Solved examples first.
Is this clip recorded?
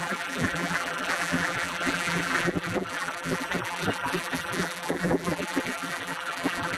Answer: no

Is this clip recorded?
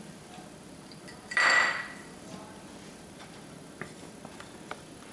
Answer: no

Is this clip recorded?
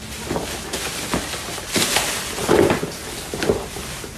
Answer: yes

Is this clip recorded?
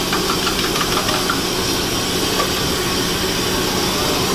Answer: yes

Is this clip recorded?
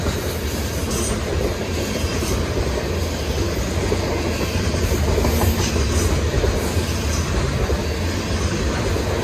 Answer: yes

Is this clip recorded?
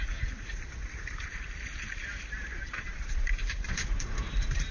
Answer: no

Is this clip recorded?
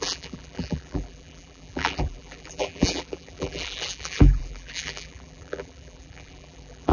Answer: no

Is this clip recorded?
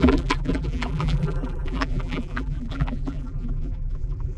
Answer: no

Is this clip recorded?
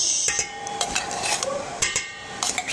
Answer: no